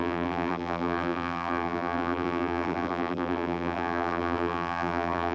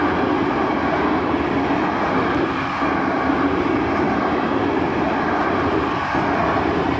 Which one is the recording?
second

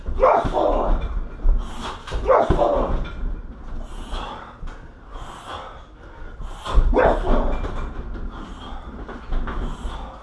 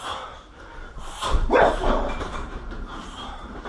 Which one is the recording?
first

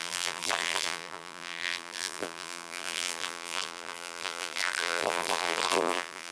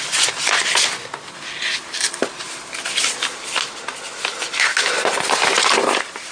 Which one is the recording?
second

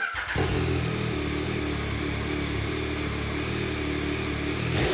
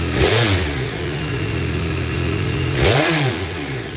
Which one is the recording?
first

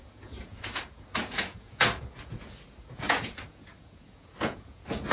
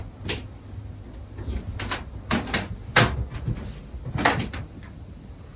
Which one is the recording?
second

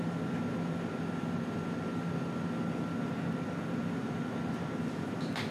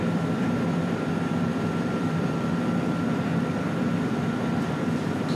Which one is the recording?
first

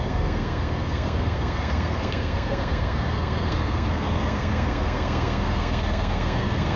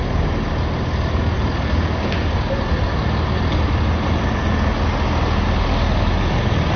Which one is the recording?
second